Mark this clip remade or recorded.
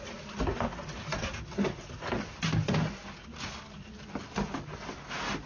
recorded